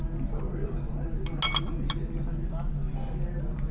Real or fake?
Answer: real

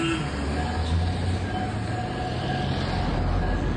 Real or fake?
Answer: real